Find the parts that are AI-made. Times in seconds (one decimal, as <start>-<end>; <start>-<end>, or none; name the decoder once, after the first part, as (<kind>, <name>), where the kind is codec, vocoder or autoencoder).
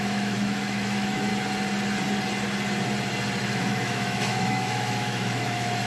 0.0-1.3 (autoencoder, DAC-VAE); 3.4-5.9